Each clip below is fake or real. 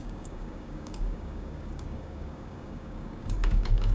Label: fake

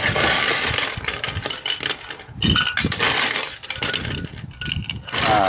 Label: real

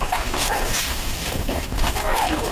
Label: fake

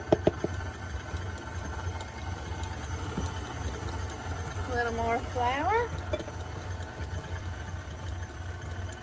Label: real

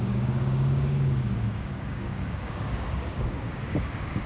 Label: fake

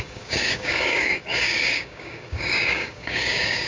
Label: fake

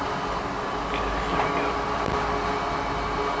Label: real